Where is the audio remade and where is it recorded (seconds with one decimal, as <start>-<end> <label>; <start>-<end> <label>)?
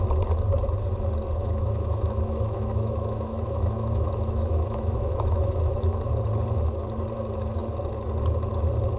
0.0-1.4 recorded; 1.4-6.1 remade; 6.1-9.0 recorded